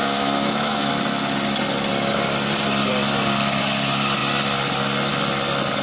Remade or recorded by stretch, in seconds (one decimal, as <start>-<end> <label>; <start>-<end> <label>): 0.0-0.9 remade; 0.9-5.8 recorded